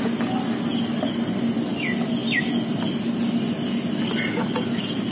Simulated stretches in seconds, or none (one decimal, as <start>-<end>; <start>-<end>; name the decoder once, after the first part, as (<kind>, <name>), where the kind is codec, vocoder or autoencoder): none

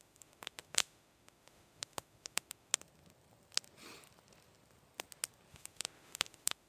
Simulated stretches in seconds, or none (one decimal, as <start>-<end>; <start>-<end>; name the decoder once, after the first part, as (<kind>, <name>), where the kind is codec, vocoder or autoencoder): 0.0-2.7 (autoencoder, DAC-VAE); 5.5-6.7

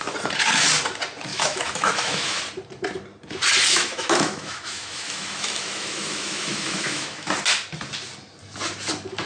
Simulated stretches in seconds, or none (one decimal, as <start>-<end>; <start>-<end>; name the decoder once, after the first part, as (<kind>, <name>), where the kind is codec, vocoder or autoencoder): 1.3-2.4 (autoencoder, DAC-VAE); 3.7-7.3

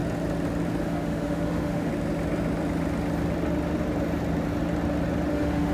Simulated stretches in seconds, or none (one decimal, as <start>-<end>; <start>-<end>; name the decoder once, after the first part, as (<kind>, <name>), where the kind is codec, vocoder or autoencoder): 0.8-1.9 (autoencoder, DAC-VAE); 5.3-5.7

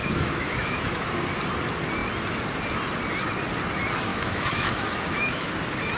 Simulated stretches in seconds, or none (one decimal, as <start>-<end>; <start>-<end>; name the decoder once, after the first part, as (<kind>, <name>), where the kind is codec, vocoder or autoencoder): 0.0-1.1 (autoencoder, DAC-VAE); 4.1-5.6

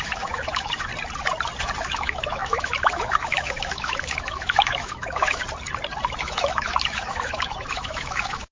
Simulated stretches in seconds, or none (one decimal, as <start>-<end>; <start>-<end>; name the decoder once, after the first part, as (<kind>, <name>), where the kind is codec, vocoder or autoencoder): 0.0-0.9 (autoencoder, DAC-VAE); 1.8-5.4; 6.2-8.5